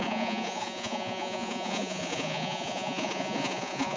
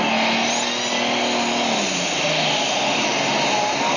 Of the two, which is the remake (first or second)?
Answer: first